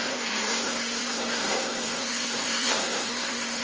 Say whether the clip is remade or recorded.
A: remade